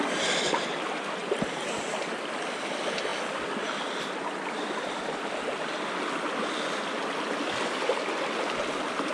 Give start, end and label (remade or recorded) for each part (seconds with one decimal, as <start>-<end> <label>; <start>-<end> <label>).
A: 0.0-9.1 recorded